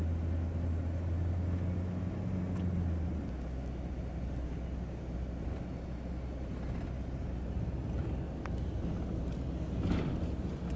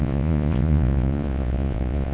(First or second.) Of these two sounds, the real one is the first